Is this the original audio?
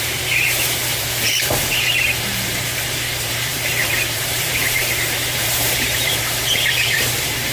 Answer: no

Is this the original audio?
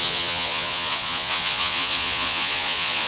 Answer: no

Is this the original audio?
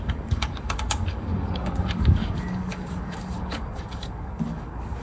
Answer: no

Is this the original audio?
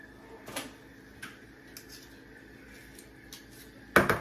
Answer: yes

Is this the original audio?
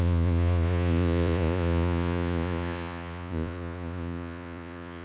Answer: no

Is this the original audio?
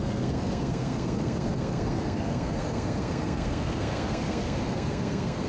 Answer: no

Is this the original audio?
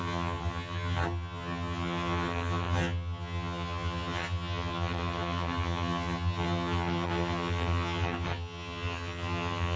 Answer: no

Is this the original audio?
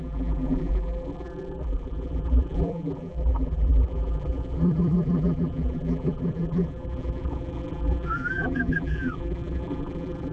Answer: no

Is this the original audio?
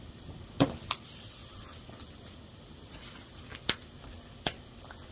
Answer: yes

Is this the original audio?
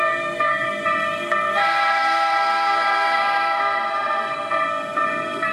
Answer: no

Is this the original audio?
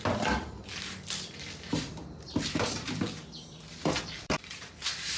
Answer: no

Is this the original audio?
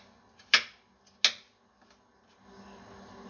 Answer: yes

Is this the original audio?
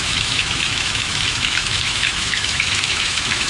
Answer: no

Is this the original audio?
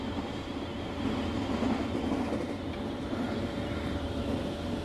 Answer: yes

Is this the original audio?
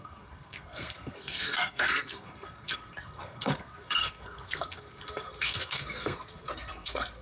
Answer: no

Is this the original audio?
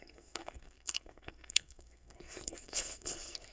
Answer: no